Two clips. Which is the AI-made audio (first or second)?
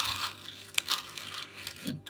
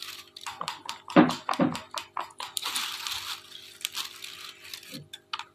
first